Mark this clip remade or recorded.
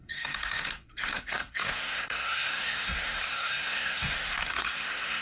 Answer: remade